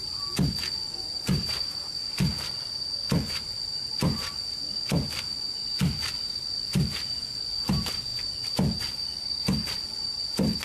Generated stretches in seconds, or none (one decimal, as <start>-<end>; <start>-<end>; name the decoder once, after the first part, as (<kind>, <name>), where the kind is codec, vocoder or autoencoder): none